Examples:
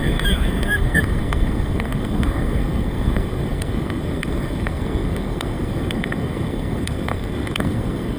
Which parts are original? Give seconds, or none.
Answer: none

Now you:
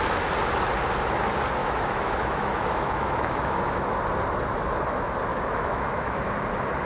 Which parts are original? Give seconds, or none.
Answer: 0.0-1.6; 3.8-5.3; 6.2-6.9

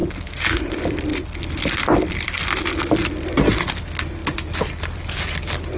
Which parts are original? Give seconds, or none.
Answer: 0.0-5.8

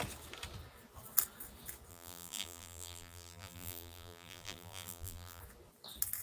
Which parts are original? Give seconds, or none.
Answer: 0.0-1.9; 5.4-6.2

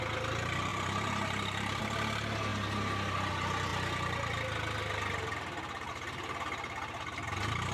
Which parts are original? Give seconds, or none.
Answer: 0.0-0.7; 1.8-7.7